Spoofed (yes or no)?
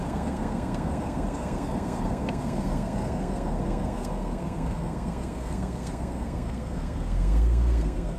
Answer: yes